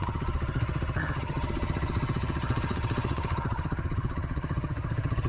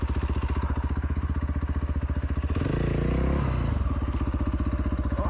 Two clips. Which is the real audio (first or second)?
second